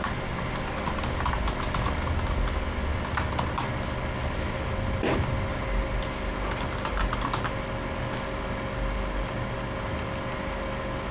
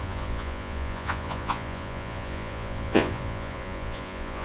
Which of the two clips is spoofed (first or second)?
second